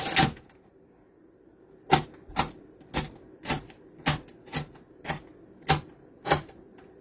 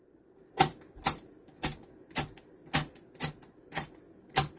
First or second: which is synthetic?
second